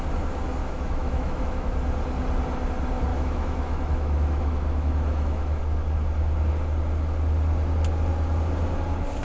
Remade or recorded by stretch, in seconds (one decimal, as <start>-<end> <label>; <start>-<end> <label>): 0.0-0.6 recorded; 0.6-1.7 remade; 1.7-3.1 recorded; 3.1-5.6 remade; 5.6-9.2 recorded